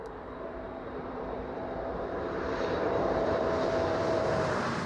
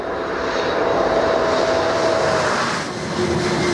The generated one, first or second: first